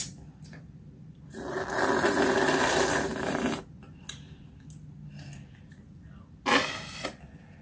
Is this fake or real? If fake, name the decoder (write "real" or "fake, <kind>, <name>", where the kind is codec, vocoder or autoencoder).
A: real